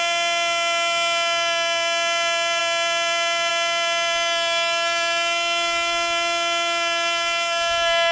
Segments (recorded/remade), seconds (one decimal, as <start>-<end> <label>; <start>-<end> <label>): 0.0-8.1 recorded